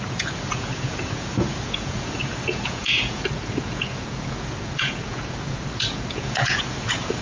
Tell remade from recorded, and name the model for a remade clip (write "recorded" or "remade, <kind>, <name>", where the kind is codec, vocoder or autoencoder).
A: remade, vocoder, Vocos